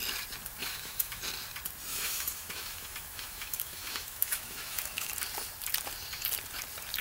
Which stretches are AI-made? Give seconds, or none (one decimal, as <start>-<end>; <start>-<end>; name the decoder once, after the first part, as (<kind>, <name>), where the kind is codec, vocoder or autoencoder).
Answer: 0.6-1.2 (autoencoder, DAC-VAE); 1.9-5.1